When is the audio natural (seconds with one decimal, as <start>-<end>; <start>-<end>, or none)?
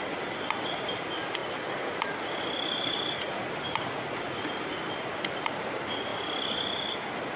0.0-7.4